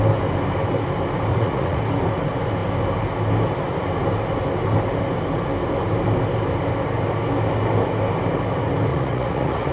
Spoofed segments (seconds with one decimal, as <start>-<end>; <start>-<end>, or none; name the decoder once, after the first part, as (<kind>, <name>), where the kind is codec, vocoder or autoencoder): 1.3-1.8 (vocoder, Vocos); 8.9-9.7